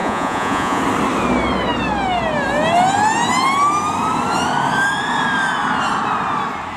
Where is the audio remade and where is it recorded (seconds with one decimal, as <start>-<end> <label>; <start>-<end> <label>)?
0.0-0.8 remade; 0.8-6.8 recorded